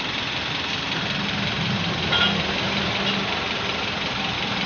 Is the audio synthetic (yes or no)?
no